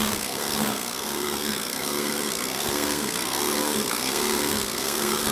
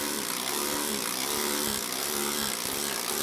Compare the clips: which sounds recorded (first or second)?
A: second